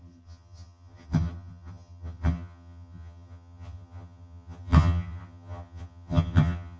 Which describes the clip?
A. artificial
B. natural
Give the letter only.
A